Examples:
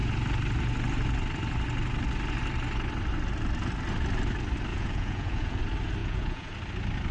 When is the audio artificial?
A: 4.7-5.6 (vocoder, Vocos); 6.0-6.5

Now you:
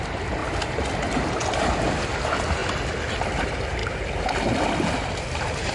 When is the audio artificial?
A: 0.0-0.4 (vocoder, BigVGAN v2); 1.6-2.6; 3.2-3.8; 5.2-5.7

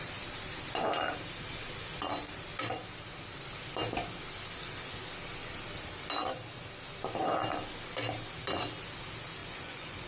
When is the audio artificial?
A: 9.4-10.1 (vocoder, Vocos)

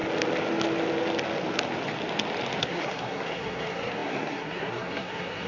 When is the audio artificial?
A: 2.6-5.5 (codec, SNAC)

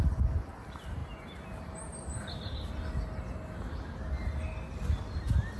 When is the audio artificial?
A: none

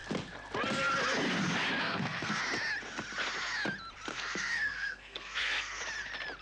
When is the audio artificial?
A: 1.8-2.4 (codec, SNAC); 4.1-5.8